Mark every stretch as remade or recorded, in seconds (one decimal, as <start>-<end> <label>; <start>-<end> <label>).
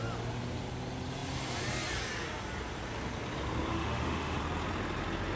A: 0.0-3.7 recorded; 3.7-4.4 remade; 4.4-5.4 recorded